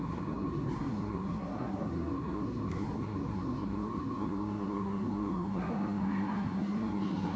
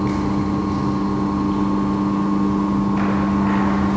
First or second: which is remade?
first